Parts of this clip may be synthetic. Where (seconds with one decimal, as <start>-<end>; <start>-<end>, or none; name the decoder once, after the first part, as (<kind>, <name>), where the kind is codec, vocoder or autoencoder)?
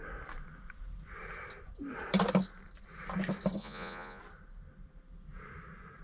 3.6-4.2 (vocoder, Vocos)